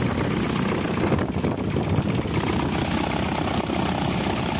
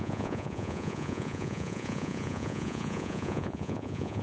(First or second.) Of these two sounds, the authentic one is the first